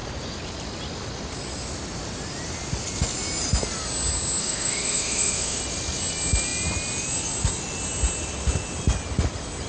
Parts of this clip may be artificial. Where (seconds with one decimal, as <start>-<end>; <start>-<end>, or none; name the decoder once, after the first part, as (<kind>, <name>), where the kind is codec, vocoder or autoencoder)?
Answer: 4.4-5.6 (autoencoder, DAC-VAE)